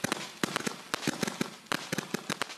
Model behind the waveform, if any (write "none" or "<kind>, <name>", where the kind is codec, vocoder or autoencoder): none